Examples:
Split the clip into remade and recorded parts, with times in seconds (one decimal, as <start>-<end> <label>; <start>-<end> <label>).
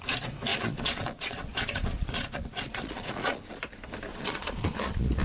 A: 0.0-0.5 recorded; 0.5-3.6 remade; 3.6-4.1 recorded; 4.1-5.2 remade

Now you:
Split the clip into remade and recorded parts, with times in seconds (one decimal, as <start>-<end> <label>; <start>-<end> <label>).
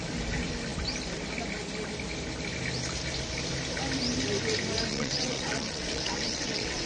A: 0.0-4.9 recorded; 4.9-6.9 remade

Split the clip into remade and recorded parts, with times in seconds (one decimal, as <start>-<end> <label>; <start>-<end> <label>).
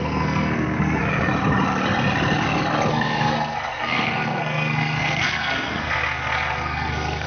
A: 0.0-1.0 remade; 1.0-2.9 recorded; 2.9-7.3 remade